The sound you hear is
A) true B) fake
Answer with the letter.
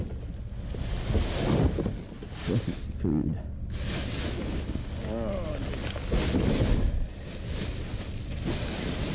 A